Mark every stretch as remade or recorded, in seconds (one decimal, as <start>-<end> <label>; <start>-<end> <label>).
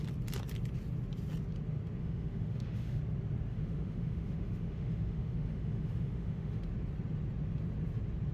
0.0-2.0 recorded; 2.0-3.0 remade; 3.0-3.5 recorded; 3.5-6.6 remade; 6.6-8.3 recorded